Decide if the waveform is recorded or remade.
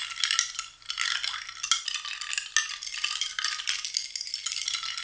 recorded